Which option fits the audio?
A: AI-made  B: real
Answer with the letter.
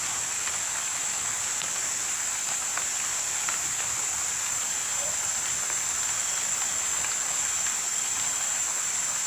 B